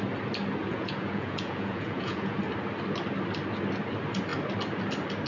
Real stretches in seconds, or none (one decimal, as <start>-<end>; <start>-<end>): 0.0-0.6; 2.4-5.3